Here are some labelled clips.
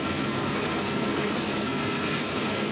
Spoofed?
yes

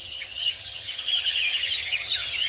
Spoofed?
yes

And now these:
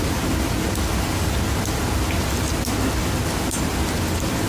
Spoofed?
yes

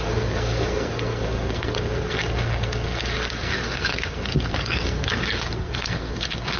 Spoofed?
yes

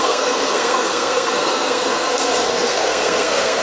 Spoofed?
yes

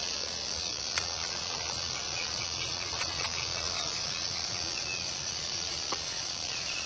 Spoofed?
yes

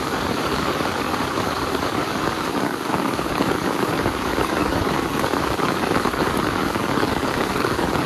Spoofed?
yes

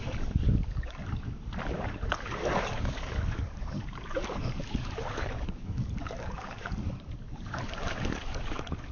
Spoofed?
yes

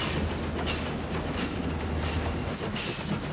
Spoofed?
no